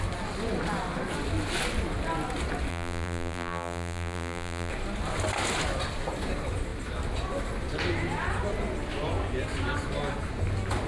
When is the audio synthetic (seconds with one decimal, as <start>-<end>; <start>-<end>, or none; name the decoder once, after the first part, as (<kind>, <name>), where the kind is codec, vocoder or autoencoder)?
2.7-4.7 (vocoder, BigVGAN v2)